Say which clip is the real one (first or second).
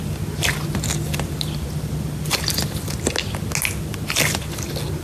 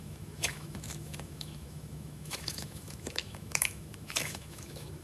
first